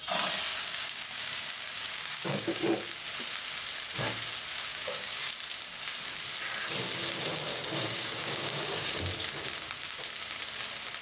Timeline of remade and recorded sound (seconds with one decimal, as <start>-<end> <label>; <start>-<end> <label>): 0.0-0.5 recorded; 0.5-2.6 remade; 2.6-4.7 recorded; 4.7-5.3 remade; 5.3-7.5 recorded; 7.5-8.9 remade; 8.9-11.0 recorded